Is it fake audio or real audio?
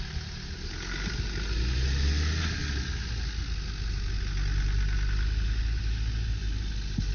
real